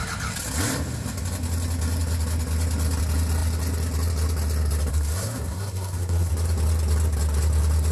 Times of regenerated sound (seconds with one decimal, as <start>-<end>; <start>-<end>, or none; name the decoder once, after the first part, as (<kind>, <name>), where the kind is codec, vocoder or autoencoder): 4.9-6.3 (codec, SNAC)